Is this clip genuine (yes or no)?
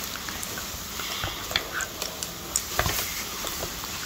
yes